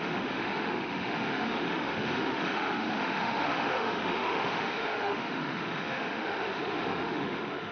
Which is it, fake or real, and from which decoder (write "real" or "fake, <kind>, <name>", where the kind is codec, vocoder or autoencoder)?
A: fake, autoencoder, DAC-VAE